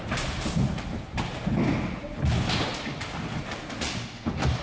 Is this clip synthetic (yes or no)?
no